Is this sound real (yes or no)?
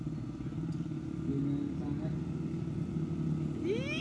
yes